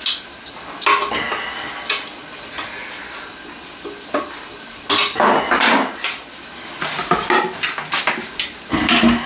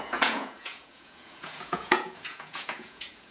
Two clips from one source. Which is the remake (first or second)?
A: second